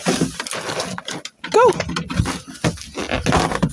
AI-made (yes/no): no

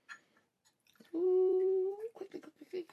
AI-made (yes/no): yes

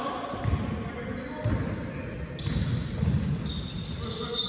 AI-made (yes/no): no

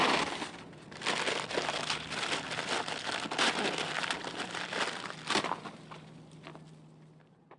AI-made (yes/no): no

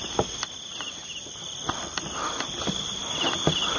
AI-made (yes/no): no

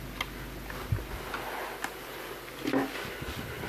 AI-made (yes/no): no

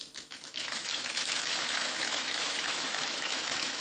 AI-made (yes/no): yes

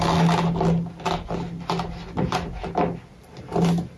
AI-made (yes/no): no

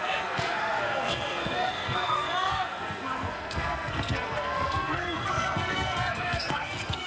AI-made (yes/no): yes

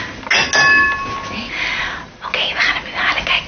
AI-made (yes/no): no